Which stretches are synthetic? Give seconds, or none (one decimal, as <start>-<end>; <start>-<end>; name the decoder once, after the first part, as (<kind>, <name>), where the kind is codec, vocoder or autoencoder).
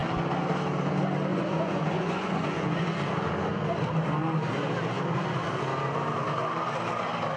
1.3-2.9 (vocoder, Vocos)